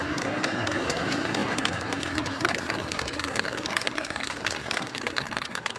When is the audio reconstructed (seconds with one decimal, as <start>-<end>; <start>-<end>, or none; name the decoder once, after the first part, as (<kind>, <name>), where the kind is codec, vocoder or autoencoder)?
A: 0.0-5.8 (codec, SNAC)